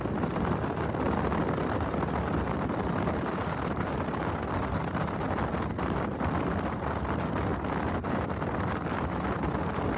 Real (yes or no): yes